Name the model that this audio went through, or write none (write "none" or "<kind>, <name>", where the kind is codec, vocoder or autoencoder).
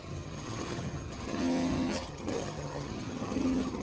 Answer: vocoder, HiFi-GAN